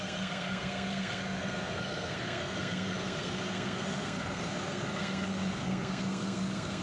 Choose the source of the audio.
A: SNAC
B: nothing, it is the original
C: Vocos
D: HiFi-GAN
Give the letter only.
A